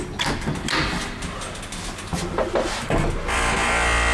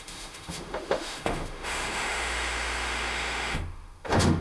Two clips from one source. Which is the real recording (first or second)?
first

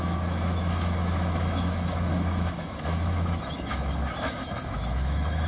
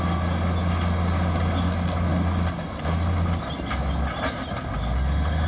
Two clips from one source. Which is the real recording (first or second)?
second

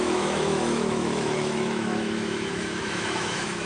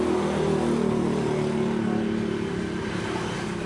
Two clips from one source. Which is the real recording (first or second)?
second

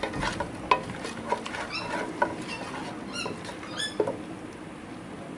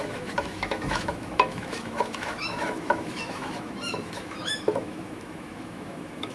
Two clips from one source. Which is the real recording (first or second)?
first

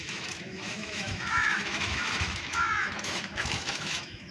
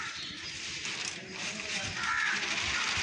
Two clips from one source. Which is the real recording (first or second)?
second